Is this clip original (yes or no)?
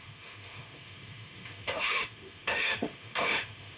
no